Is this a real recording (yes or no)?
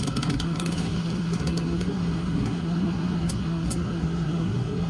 no